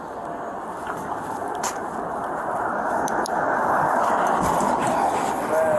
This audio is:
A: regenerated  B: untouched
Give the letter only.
B